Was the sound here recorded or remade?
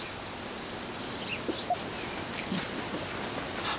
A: recorded